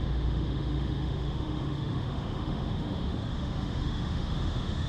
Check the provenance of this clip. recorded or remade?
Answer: remade